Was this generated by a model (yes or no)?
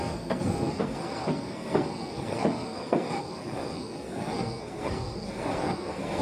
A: yes